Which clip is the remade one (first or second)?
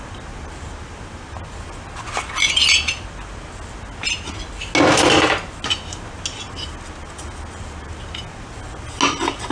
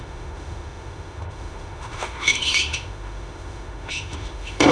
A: second